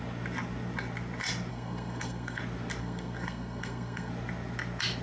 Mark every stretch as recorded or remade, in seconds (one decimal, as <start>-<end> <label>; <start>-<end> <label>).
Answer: 0.0-1.5 recorded; 1.5-2.4 remade; 2.4-2.8 recorded; 2.8-4.1 remade; 4.1-5.0 recorded